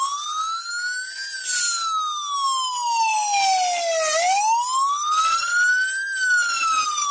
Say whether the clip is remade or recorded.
recorded